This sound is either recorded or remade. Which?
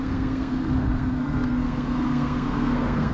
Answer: remade